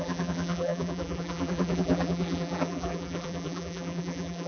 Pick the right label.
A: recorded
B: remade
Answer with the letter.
B